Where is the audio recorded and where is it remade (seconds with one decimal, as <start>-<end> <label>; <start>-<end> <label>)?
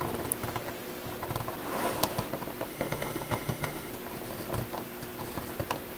0.0-2.7 recorded; 2.7-3.9 remade; 3.9-6.0 recorded